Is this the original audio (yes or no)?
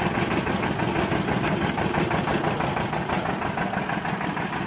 yes